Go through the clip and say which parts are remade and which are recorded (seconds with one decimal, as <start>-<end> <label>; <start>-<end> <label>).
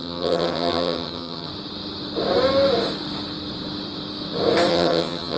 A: 0.0-1.5 remade; 1.5-4.7 recorded; 4.7-5.4 remade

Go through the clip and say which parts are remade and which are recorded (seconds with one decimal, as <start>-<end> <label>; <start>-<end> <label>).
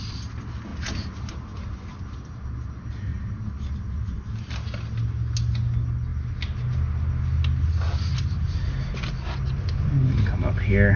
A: 0.0-3.1 recorded; 3.1-4.5 remade; 4.5-11.0 recorded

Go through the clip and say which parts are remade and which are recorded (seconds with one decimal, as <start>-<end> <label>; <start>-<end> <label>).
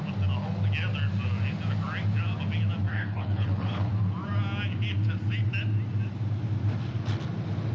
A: 0.0-2.9 recorded; 2.9-3.9 remade; 3.9-7.7 recorded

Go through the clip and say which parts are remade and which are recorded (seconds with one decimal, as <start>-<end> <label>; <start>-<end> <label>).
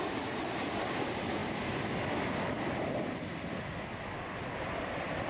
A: 0.0-1.4 remade; 1.4-4.6 recorded; 4.6-5.3 remade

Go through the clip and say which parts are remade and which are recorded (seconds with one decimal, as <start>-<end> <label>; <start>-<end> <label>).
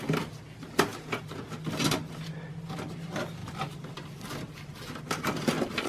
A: 0.0-5.9 recorded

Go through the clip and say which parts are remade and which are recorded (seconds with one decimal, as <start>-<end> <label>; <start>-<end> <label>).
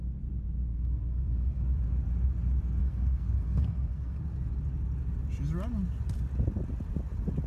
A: 0.0-0.7 recorded; 0.7-1.6 remade; 1.6-2.8 recorded; 2.8-4.2 remade; 4.2-7.5 recorded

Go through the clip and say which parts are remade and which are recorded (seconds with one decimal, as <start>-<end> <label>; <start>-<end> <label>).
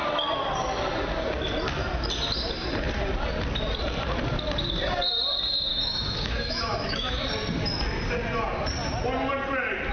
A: 0.0-5.7 recorded; 5.7-7.3 remade; 7.3-9.9 recorded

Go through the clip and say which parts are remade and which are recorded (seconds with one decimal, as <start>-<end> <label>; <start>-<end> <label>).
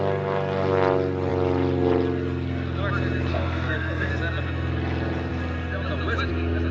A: 0.0-3.3 recorded; 3.3-4.1 remade; 4.1-6.7 recorded